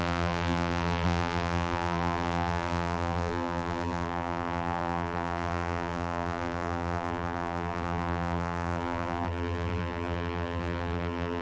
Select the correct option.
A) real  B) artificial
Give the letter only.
B